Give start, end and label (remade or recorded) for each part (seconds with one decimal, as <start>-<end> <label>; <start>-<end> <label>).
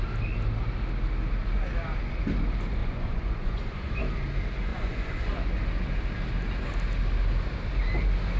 0.0-2.8 recorded; 2.8-4.0 remade; 4.0-4.7 recorded; 4.7-5.3 remade; 5.3-8.4 recorded